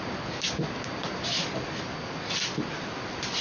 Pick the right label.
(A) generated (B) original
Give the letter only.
B